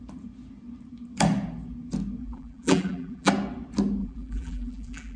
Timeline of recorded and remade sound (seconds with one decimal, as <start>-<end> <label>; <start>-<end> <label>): 0.0-2.2 recorded; 2.2-3.3 remade; 3.3-4.0 recorded; 4.0-5.2 remade